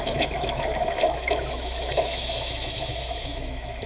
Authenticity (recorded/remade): remade